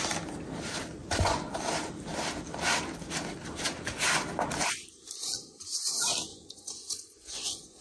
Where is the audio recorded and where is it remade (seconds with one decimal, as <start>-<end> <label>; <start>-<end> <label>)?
0.0-1.0 recorded; 1.0-1.5 remade; 1.5-6.3 recorded; 6.3-7.8 remade